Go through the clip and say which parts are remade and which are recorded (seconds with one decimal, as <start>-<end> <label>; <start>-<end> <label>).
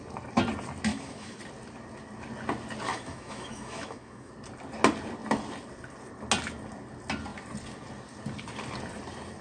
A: 0.0-0.9 recorded; 0.9-1.4 remade; 1.4-2.9 recorded; 2.9-4.3 remade; 4.3-9.4 recorded